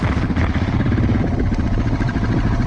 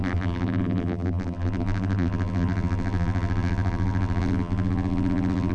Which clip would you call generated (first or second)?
second